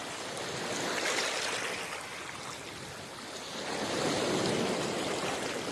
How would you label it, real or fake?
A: real